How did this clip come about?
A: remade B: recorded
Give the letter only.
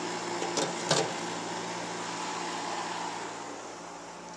B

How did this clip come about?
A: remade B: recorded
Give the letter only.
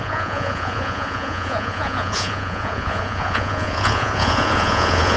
A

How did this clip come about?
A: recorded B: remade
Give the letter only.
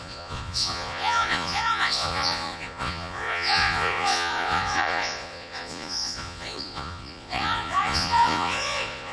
B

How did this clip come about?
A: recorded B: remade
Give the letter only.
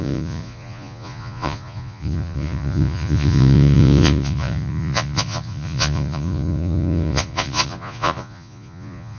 B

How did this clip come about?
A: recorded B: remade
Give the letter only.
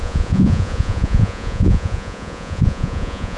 B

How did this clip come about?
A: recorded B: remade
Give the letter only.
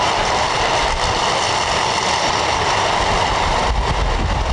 A